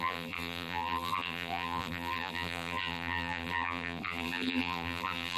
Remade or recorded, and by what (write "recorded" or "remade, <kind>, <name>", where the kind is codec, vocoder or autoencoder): remade, vocoder, BigVGAN v2